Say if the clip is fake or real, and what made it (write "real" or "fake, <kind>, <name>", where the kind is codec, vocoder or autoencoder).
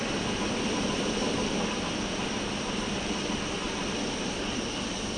fake, vocoder, BigVGAN v2